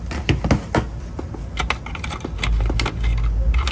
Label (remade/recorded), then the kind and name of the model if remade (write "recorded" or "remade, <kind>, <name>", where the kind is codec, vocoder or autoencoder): recorded